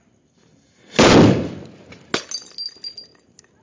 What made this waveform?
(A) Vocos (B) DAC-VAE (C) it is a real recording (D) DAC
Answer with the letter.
C